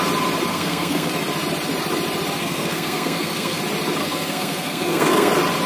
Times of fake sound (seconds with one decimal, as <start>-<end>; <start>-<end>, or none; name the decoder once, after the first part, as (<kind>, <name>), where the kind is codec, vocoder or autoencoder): 0.5-1.1 (codec, SNAC); 2.4-3.6; 4.0-5.3